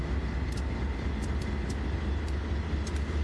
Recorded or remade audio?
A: recorded